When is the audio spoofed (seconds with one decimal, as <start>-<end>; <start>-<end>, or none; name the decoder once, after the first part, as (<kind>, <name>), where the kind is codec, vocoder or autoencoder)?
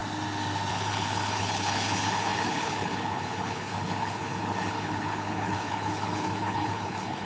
0.7-7.3 (codec, HILCodec)